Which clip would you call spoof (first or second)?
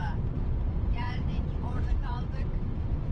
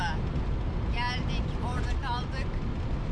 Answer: first